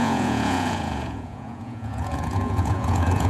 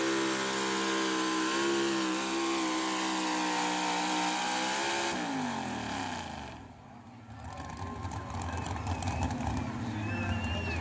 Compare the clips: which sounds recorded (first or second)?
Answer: second